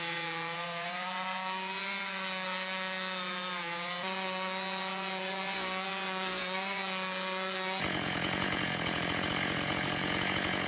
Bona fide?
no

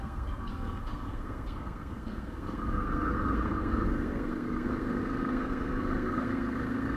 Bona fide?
no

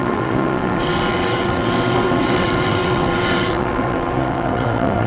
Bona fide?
no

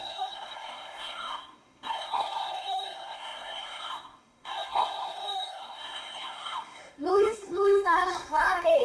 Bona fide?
no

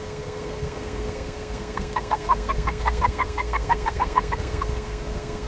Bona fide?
no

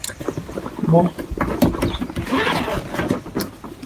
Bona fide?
yes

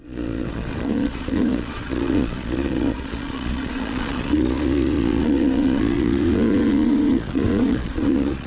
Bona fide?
no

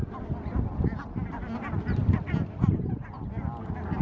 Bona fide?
yes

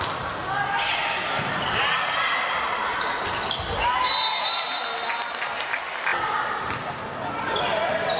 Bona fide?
yes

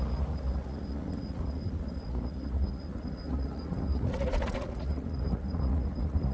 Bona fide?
no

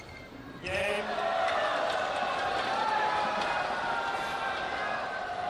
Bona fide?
yes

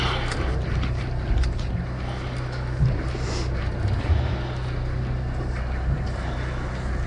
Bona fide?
yes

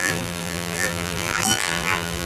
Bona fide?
no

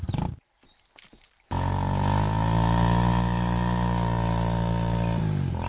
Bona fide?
yes